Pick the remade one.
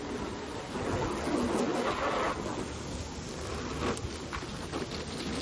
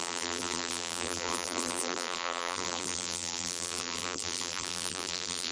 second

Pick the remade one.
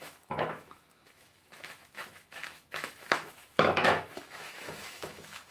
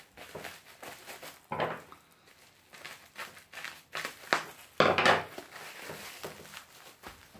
first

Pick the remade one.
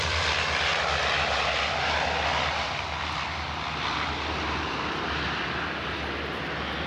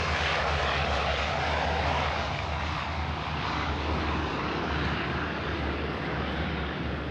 second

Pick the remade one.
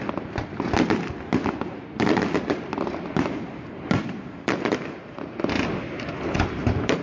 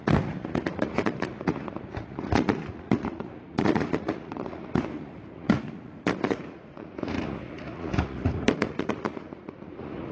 second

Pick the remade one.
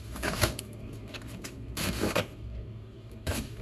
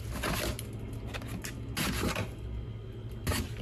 first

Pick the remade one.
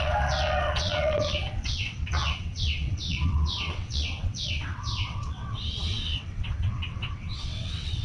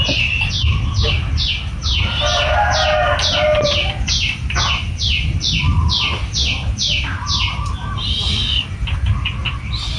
first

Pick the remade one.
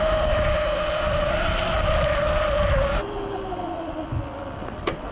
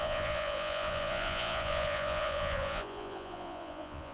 second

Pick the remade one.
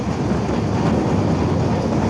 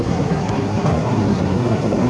second